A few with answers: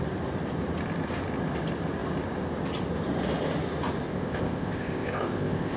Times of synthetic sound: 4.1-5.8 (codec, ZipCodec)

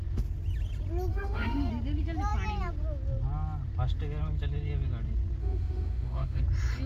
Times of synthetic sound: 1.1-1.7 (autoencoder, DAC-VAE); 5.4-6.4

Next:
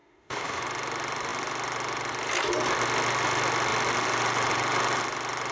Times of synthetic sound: 0.0-0.6 (autoencoder, DAC-VAE)